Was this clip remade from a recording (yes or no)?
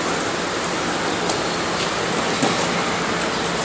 no